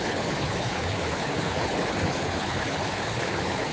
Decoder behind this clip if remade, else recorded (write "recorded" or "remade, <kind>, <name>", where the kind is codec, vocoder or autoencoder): remade, codec, HILCodec